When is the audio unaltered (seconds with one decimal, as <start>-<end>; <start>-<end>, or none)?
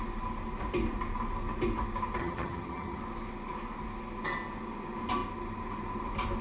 0.0-2.2; 3.0-6.4